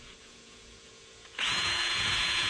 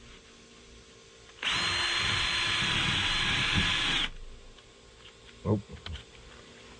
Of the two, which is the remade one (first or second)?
first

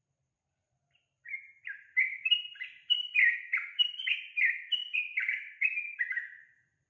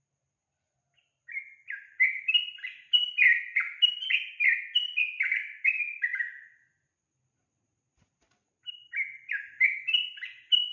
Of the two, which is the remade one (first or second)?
first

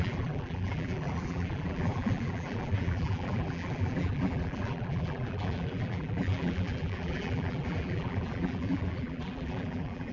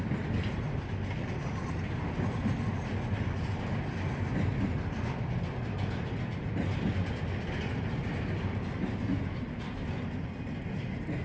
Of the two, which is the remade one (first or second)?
first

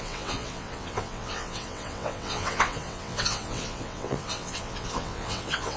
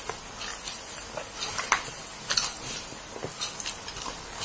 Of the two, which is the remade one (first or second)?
first